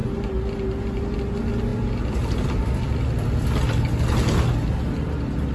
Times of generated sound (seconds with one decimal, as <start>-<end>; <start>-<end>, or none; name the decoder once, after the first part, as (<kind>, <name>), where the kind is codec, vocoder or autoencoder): none